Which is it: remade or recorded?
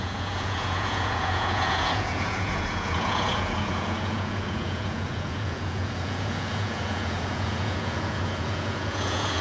remade